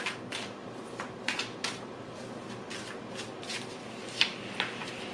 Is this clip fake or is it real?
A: real